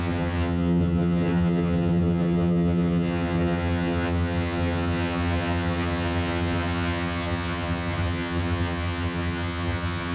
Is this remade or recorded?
remade